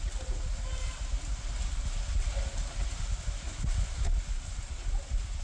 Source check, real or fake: real